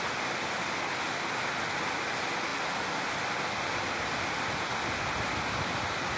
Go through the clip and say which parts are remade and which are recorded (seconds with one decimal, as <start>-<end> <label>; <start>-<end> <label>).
0.0-6.2 recorded